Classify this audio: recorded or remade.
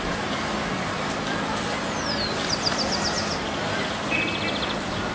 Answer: remade